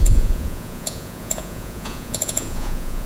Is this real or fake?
fake